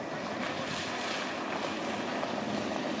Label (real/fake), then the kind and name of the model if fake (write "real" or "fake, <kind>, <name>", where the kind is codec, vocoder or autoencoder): real